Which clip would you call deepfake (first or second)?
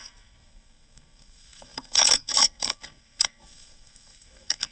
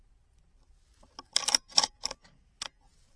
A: first